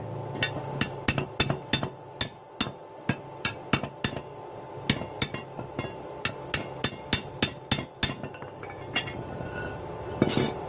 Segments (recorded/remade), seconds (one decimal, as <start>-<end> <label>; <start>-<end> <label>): 0.0-10.7 recorded